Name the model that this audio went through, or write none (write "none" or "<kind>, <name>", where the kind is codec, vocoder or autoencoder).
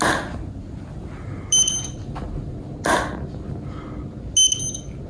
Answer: none